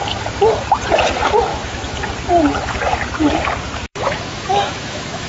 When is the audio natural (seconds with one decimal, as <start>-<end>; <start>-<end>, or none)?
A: 0.0-1.5; 2.0-3.9